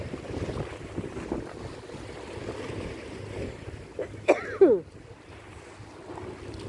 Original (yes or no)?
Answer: yes